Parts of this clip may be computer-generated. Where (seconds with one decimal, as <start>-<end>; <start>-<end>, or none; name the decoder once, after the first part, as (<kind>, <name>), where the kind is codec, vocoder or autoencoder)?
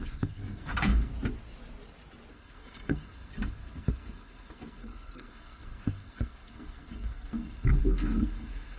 0.0-1.1 (codec, SNAC); 2.3-8.8